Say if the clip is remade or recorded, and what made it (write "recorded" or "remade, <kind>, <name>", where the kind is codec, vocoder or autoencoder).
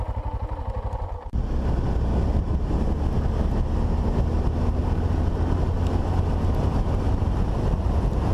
recorded